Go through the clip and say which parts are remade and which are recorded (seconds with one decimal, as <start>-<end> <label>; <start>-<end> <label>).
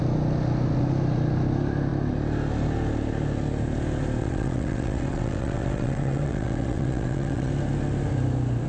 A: 0.0-4.2 recorded; 4.2-7.5 remade; 7.5-8.7 recorded